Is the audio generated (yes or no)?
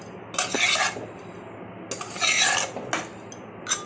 no